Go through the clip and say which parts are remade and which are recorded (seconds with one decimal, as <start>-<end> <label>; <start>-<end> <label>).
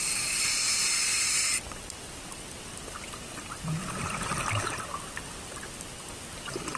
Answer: 0.0-6.8 recorded